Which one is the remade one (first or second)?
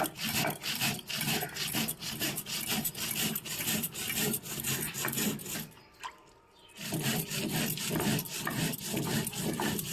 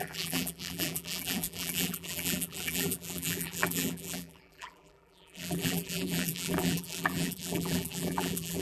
second